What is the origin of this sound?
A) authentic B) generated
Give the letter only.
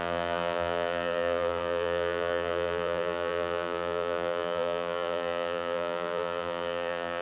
B